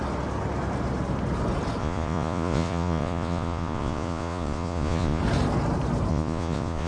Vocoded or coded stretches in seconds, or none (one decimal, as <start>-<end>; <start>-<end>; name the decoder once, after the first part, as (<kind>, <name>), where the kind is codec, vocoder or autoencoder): 1.8-5.2 (vocoder, Vocos); 6.1-6.9